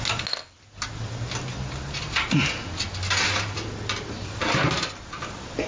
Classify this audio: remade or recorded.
recorded